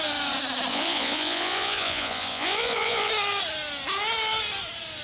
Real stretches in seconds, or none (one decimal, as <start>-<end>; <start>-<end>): 0.0-0.7; 3.1-5.0